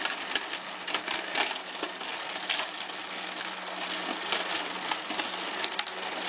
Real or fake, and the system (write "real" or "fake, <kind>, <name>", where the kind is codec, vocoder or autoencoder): real